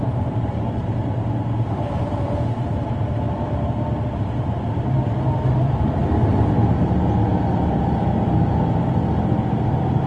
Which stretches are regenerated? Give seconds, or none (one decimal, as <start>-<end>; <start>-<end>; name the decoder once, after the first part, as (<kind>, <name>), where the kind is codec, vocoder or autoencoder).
0.0-6.0 (vocoder, BigVGAN v2); 7.6-10.1